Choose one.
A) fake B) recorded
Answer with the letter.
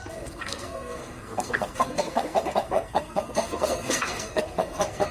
A